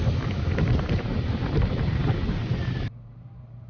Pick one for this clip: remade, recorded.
remade